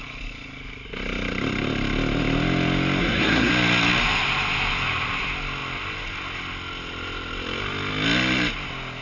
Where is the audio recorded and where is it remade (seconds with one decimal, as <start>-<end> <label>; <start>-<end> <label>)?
0.0-3.0 recorded; 3.0-3.5 remade; 3.5-9.0 recorded